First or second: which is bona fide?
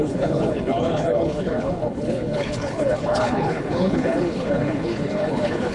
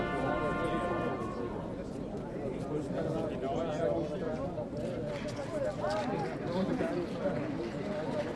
second